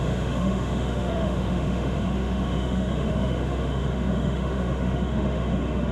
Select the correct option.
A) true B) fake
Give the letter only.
B